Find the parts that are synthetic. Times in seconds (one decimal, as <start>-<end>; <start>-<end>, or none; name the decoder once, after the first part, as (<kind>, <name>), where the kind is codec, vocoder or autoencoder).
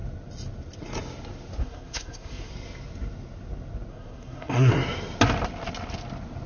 1.6-2.5 (codec, SNAC); 3.9-4.7